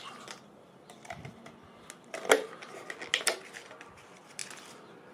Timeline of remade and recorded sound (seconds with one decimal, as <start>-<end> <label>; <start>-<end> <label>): 0.0-5.1 recorded